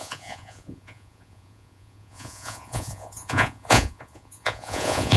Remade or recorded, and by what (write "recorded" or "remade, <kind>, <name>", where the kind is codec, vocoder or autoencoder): remade, vocoder, Vocos